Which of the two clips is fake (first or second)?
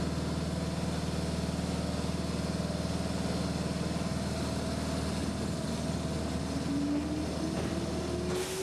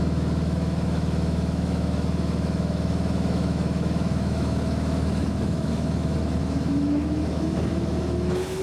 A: second